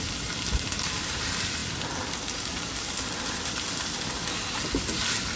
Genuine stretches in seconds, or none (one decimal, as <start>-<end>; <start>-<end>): 0.0-5.4